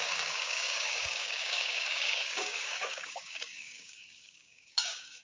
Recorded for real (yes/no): no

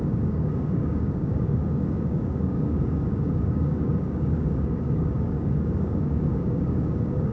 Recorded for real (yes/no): no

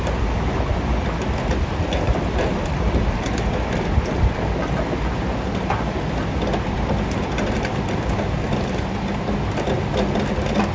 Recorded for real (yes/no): yes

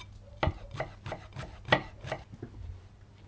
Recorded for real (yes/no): yes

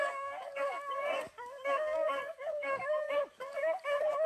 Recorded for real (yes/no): no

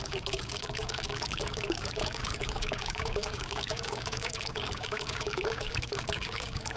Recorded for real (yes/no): no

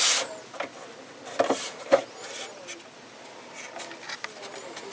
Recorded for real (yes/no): yes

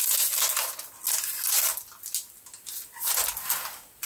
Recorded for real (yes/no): yes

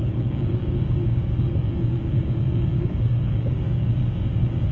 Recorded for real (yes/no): no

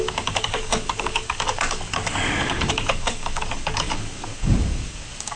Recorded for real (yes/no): no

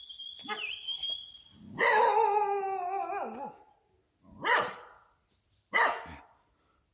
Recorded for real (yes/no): yes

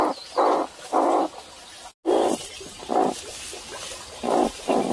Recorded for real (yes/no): yes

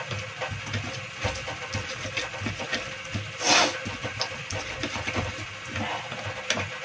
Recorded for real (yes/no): yes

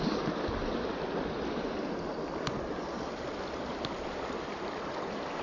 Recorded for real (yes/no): yes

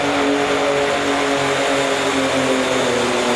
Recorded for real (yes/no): yes